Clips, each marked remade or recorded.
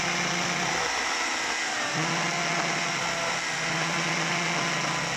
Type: recorded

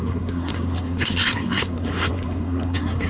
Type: remade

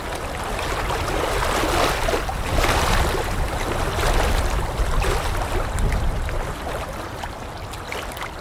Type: recorded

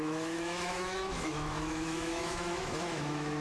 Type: remade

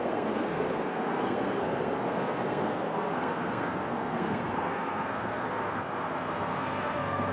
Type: remade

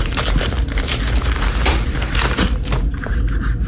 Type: remade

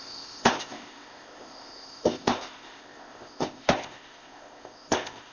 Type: remade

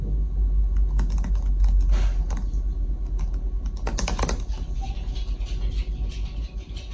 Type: recorded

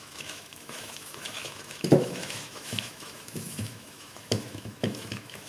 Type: remade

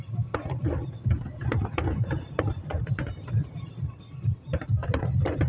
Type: remade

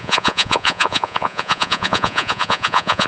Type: remade